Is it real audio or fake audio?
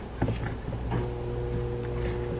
real